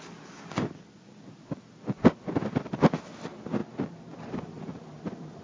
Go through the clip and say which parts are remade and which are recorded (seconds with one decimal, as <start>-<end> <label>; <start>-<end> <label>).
0.0-5.4 recorded